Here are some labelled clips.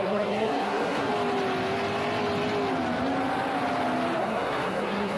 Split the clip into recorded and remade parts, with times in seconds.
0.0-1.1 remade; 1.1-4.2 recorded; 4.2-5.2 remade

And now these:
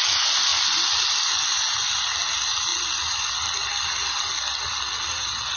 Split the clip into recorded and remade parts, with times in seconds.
0.0-5.6 recorded

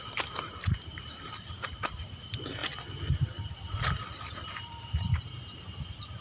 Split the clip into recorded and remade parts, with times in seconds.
0.0-2.6 remade; 2.6-3.8 recorded; 3.8-6.2 remade

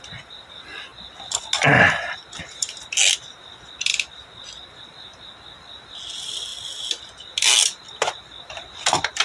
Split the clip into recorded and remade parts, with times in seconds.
0.0-9.2 recorded

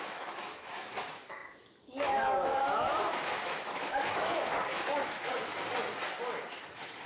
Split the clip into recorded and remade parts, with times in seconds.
0.0-5.5 remade; 5.5-6.5 recorded; 6.5-7.1 remade